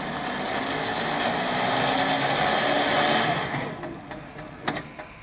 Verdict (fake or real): real